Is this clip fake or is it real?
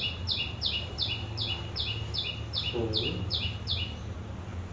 real